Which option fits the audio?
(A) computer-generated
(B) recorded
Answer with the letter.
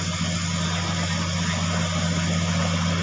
B